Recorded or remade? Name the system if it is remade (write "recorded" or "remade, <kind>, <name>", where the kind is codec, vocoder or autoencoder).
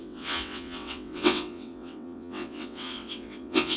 remade, vocoder, WaveNeXt